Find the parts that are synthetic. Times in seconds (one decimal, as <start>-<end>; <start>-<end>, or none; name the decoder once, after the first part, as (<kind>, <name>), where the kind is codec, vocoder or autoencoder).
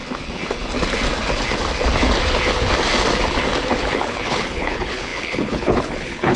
3.8-6.4 (codec, HILCodec)